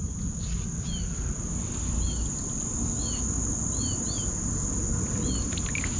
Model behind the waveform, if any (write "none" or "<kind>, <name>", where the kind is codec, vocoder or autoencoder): none